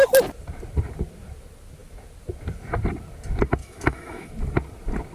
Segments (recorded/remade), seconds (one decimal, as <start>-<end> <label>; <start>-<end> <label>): 0.0-3.6 recorded; 3.6-4.3 remade; 4.3-5.1 recorded